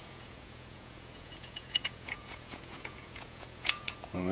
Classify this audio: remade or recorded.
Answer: remade